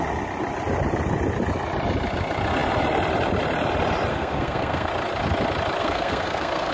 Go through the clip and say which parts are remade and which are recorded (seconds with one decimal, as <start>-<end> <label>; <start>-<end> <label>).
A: 0.0-4.1 recorded; 4.1-4.9 remade; 4.9-5.8 recorded; 5.8-6.7 remade